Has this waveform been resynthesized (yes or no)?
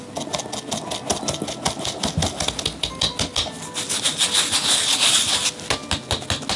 no